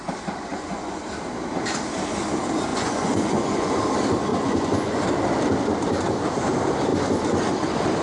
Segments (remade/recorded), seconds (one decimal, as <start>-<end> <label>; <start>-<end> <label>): 0.0-0.5 recorded; 0.5-1.0 remade; 1.0-2.7 recorded; 2.7-3.7 remade; 3.7-4.3 recorded; 4.3-5.0 remade; 5.0-8.0 recorded